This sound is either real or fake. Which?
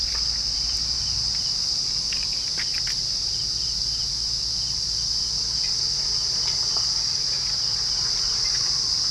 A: real